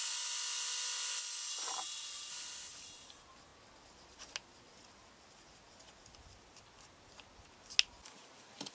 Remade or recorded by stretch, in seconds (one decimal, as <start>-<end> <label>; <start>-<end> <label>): 0.0-8.7 recorded